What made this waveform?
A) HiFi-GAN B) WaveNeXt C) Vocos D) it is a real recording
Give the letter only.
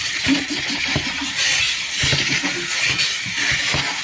D